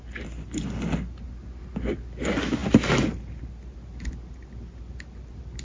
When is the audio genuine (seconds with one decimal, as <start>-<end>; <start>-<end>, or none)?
0.0-5.6

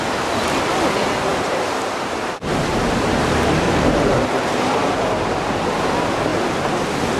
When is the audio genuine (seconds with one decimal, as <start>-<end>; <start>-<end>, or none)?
0.0-1.3; 5.6-7.2